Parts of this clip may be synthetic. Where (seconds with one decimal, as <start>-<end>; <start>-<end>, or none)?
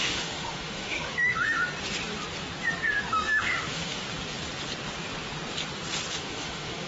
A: 0.0-1.6; 3.0-4.0; 6.1-6.9